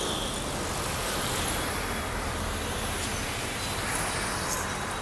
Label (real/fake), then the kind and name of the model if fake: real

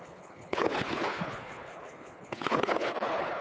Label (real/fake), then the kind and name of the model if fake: fake, codec, HILCodec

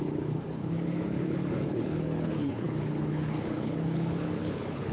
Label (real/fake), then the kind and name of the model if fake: fake, codec, HILCodec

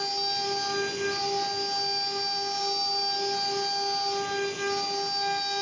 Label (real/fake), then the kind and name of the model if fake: real